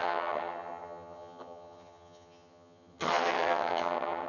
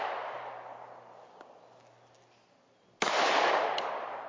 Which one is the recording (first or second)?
second